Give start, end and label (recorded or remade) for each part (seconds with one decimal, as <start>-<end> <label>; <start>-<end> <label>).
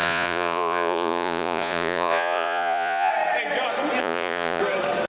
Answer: 0.0-3.1 remade; 3.1-4.0 recorded; 4.0-4.6 remade; 4.6-5.1 recorded